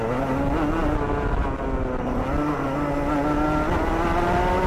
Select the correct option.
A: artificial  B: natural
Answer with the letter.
B